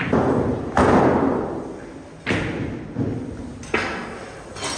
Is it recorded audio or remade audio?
recorded